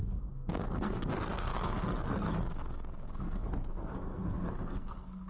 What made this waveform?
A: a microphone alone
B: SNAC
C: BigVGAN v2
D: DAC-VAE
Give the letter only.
B